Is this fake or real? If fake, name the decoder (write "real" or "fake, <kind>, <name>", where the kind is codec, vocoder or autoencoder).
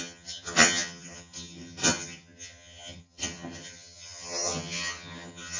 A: fake, vocoder, HiFi-GAN